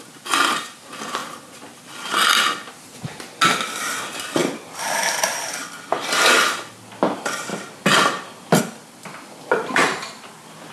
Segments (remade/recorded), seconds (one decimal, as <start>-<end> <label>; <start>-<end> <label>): 0.0-4.4 recorded; 4.4-5.1 remade; 5.1-10.7 recorded